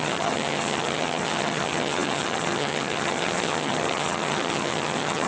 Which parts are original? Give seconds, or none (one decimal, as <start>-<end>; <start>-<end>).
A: none